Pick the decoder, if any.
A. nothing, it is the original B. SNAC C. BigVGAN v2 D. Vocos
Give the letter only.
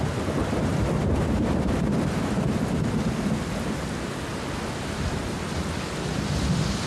A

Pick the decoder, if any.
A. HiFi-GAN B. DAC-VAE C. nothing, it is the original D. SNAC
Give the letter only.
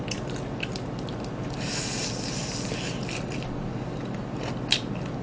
C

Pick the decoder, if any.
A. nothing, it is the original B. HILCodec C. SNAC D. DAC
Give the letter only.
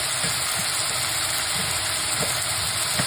A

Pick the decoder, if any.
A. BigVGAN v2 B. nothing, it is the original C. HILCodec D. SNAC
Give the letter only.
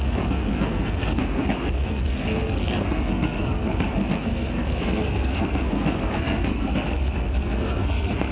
D